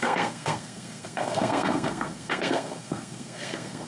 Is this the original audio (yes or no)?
no